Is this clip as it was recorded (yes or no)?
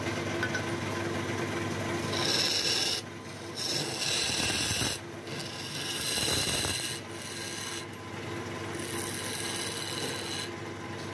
yes